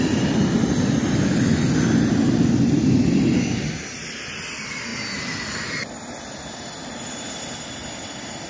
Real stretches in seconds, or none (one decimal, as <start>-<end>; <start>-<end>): 0.0-8.5